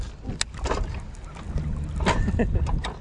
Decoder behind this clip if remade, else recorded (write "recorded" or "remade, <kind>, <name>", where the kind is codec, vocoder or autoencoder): recorded